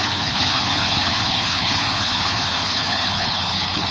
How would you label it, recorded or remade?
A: remade